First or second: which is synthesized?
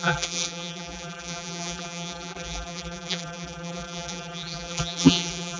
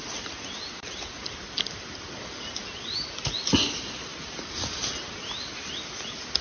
first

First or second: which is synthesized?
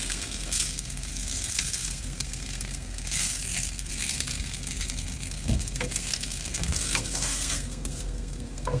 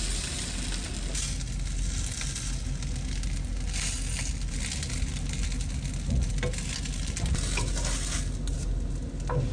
first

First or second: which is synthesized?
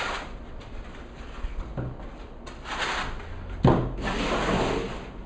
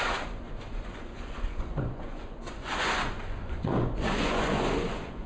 second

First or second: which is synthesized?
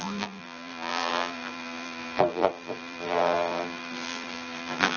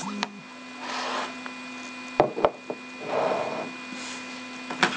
first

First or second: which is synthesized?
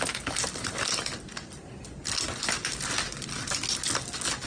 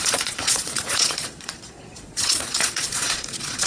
second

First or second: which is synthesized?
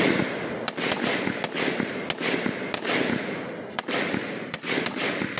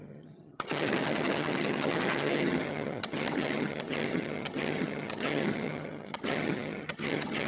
second